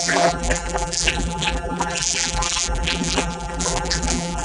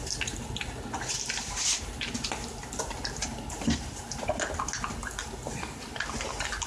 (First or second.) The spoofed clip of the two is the first